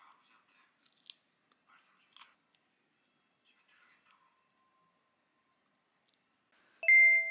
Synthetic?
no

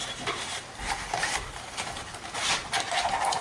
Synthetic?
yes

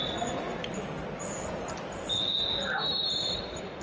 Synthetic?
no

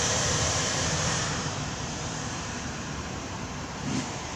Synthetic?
yes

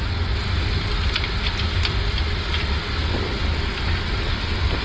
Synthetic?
no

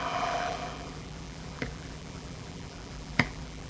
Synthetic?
yes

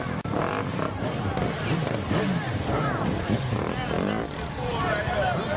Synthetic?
yes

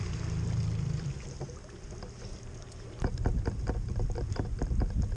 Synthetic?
no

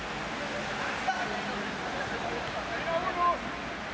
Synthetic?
no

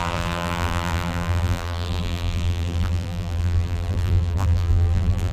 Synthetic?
yes